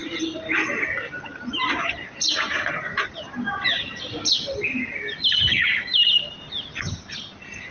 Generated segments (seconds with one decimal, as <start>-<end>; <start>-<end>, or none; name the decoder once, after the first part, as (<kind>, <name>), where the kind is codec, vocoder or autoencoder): none